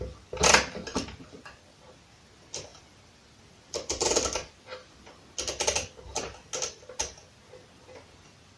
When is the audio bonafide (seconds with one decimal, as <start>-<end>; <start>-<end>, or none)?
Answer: 0.0-0.9; 1.4-2.7; 5.1-8.6